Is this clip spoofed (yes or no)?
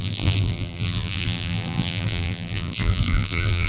yes